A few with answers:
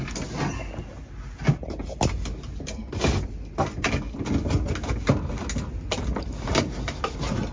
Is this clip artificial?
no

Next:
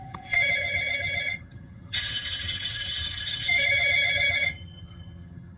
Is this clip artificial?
yes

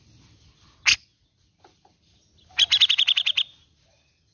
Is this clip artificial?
no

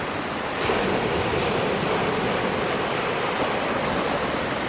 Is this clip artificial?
no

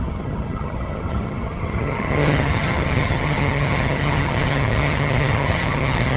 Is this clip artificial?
yes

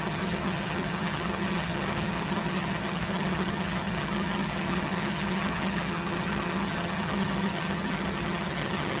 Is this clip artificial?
yes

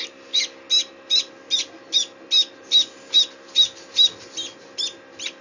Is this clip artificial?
no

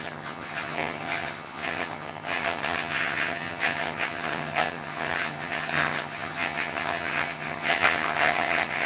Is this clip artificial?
yes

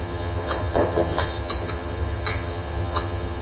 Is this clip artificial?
yes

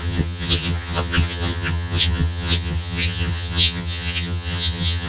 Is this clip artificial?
yes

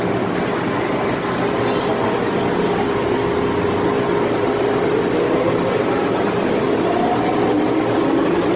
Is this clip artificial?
no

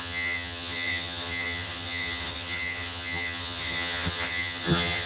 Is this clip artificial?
yes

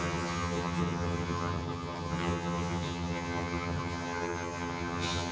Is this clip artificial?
yes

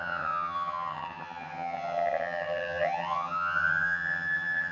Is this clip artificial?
yes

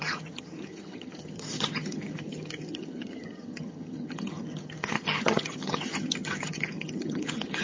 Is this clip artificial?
yes